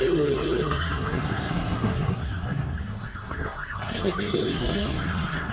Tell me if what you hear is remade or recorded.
remade